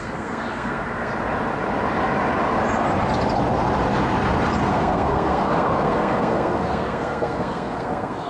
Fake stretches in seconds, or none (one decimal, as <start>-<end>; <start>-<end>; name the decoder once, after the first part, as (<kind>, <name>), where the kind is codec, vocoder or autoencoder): 0.0-1.1 (codec, SNAC); 4.7-8.3